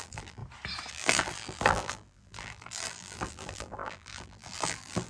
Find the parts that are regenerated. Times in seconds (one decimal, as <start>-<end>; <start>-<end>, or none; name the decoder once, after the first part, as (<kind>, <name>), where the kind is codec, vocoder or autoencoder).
0.0-0.4 (vocoder, BigVGAN v2); 0.9-5.1